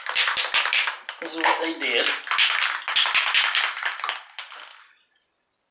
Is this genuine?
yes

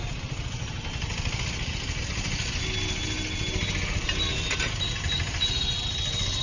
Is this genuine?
yes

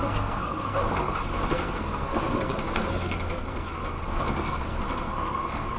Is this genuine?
no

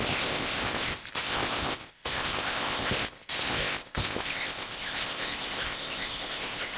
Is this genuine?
no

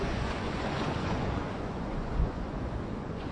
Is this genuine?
no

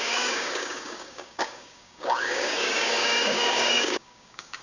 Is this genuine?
no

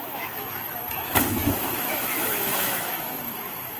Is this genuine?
no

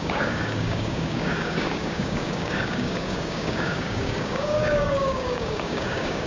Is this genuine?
no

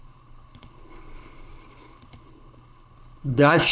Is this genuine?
no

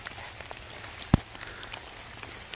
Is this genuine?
yes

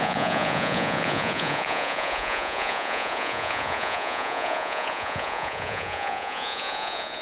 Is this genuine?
no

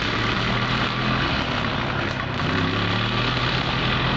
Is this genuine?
yes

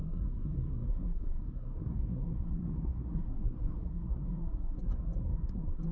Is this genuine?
no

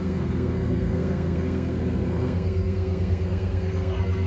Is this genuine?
no